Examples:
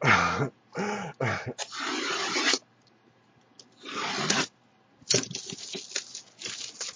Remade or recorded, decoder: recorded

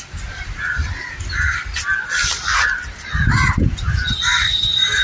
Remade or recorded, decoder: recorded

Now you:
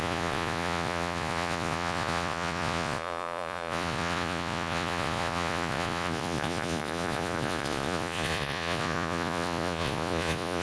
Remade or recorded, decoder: remade, vocoder, Vocos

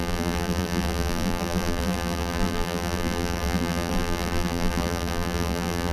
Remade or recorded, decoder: remade, vocoder, BigVGAN v2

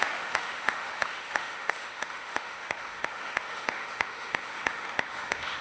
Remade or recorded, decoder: remade, autoencoder, DAC-VAE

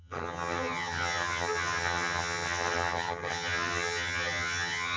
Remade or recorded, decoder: remade, vocoder, HiFi-GAN